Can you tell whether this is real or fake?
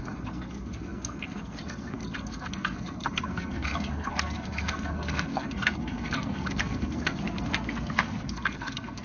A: fake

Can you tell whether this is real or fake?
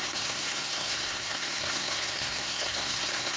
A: fake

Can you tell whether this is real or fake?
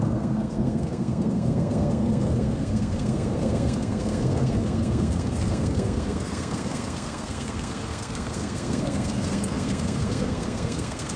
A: fake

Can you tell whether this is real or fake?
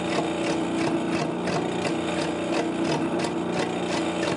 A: real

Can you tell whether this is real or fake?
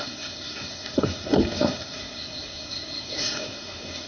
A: fake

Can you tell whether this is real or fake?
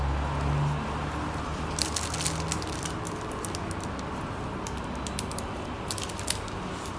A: real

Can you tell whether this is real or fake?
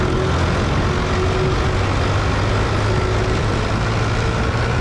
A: real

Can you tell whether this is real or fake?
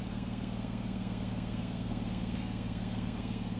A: fake